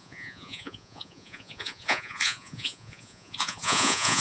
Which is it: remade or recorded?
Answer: remade